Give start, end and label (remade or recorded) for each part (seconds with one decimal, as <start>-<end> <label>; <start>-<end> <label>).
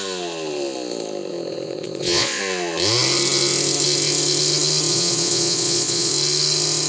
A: 0.0-1.3 recorded; 1.3-2.4 remade; 2.4-4.9 recorded; 4.9-6.1 remade; 6.1-6.9 recorded